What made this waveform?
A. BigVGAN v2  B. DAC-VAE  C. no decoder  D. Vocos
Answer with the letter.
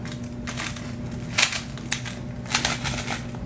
C